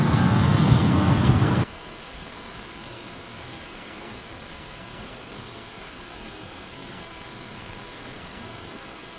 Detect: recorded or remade remade